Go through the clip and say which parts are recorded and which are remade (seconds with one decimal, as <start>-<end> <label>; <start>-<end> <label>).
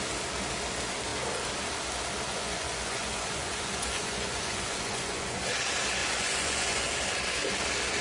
0.0-2.3 recorded; 2.3-5.4 remade; 5.4-6.0 recorded; 6.0-6.9 remade; 6.9-8.0 recorded